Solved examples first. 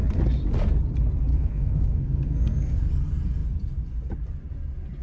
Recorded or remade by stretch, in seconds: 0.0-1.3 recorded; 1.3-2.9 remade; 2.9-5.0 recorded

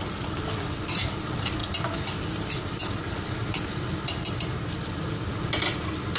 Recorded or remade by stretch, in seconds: 0.0-6.2 recorded

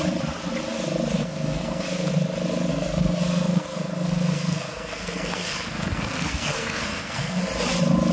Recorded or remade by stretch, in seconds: 0.0-1.2 recorded; 1.2-2.1 remade; 2.1-2.7 recorded; 2.7-7.4 remade; 7.4-8.1 recorded

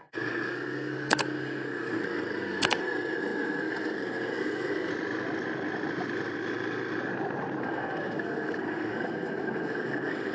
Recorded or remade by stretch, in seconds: 0.0-4.9 remade; 4.9-7.6 recorded; 7.6-10.3 remade